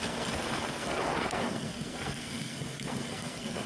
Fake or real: fake